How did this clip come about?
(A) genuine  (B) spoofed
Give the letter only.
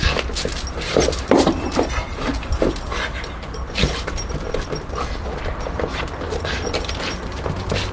A